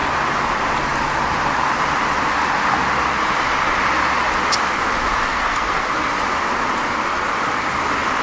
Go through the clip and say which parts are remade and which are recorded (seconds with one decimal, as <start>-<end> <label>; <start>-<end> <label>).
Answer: 0.0-5.3 recorded; 5.3-5.9 remade; 5.9-8.2 recorded